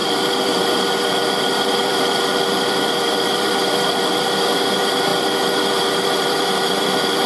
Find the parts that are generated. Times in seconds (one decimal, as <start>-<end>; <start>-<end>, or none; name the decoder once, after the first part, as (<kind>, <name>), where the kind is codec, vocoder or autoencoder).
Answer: 0.0-5.1 (vocoder, BigVGAN v2); 5.7-7.3